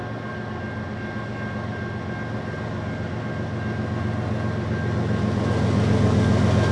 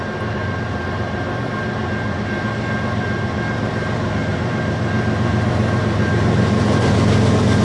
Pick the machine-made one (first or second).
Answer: second